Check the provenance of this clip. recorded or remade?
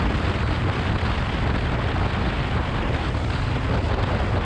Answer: recorded